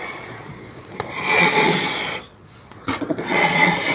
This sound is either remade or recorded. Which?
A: remade